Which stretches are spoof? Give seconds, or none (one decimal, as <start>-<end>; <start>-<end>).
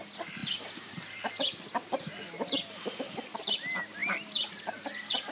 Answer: none